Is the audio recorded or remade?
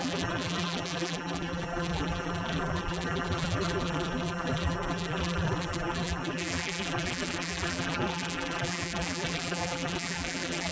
remade